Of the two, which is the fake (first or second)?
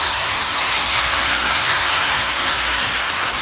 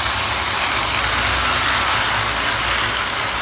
first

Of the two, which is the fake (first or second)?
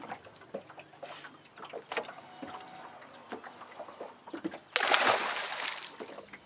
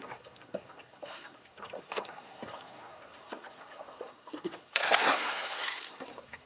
second